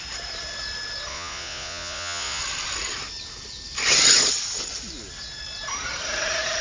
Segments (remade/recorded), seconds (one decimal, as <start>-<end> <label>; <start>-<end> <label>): 0.0-1.1 recorded; 1.1-2.4 remade; 2.4-6.6 recorded